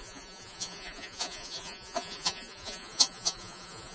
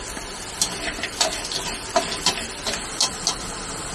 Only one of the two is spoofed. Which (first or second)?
first